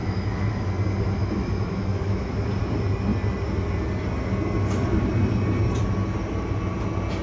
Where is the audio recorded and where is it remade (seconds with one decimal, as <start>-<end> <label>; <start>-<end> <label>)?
0.0-0.7 remade; 0.7-1.2 recorded; 1.2-2.5 remade; 2.5-7.2 recorded